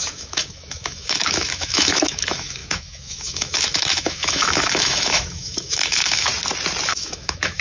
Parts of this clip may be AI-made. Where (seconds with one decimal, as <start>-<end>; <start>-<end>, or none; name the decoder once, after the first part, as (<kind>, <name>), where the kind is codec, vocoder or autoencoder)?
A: 0.0-6.3 (autoencoder, DAC-VAE); 6.9-7.6